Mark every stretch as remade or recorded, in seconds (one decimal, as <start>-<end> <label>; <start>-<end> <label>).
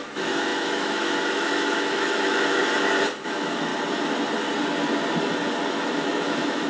0.0-2.6 remade; 2.6-3.2 recorded; 3.2-3.7 remade; 3.7-5.7 recorded; 5.7-6.7 remade